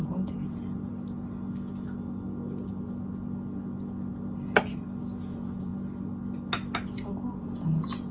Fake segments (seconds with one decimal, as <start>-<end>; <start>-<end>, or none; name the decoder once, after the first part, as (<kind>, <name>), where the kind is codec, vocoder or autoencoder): 0.0-0.9 (vocoder, Vocos); 5.2-5.7; 7.4-8.1